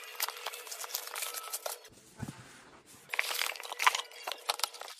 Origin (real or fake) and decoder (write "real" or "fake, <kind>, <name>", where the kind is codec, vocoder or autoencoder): real